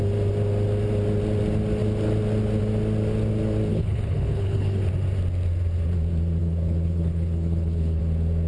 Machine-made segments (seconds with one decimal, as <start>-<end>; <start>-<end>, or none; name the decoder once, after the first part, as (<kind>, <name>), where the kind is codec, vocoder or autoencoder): 3.7-4.8 (codec, HILCodec); 6.4-8.0